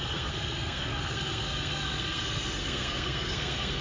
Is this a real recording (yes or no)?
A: no